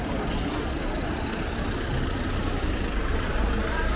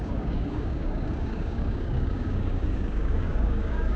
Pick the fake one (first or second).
second